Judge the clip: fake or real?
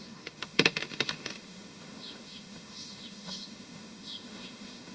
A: fake